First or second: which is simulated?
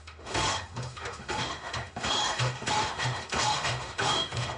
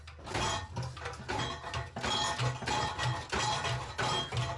first